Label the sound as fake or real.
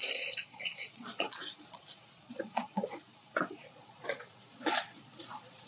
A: fake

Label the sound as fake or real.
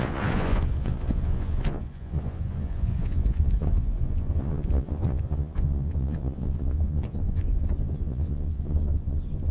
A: fake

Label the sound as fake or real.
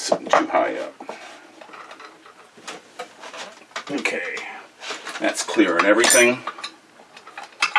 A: real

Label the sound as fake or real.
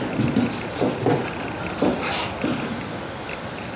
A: real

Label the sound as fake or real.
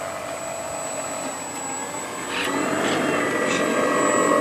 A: real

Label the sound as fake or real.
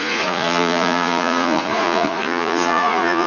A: fake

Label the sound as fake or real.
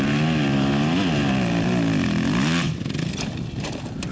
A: real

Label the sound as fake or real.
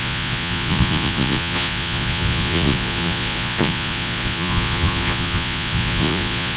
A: fake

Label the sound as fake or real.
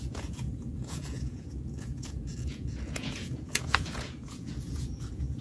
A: fake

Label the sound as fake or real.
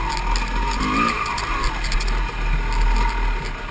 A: real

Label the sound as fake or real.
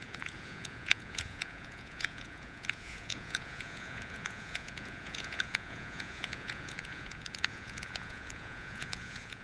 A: fake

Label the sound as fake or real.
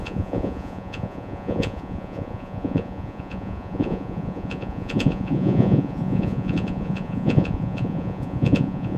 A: fake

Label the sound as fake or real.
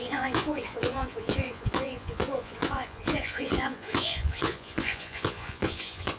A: fake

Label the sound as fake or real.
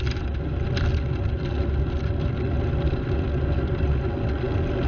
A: real